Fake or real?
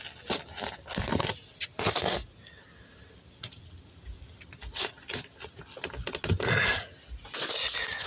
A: real